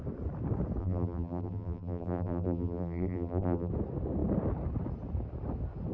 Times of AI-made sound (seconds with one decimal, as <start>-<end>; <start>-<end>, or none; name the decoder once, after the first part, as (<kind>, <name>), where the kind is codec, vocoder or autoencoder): 0.8-3.7 (vocoder, BigVGAN v2)